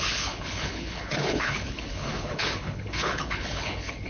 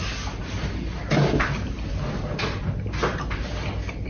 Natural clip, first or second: second